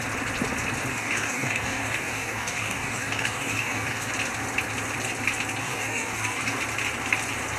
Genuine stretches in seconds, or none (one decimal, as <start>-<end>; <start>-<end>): 0.0-0.9; 4.1-5.6; 6.6-7.6